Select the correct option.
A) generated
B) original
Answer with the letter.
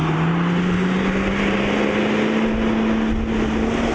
B